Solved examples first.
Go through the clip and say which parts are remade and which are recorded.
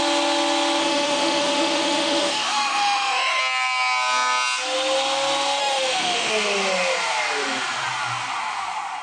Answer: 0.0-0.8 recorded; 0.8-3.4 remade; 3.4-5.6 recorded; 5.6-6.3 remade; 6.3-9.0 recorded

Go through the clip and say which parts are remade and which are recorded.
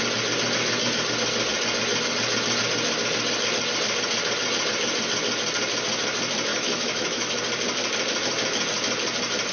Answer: 0.0-6.5 recorded; 6.5-7.4 remade; 7.4-9.5 recorded